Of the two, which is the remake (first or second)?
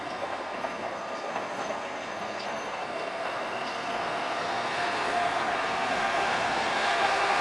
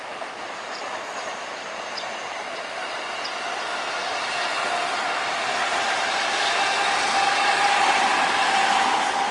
first